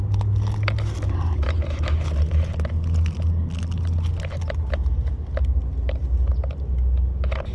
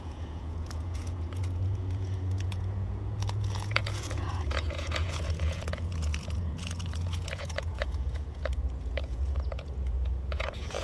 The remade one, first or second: second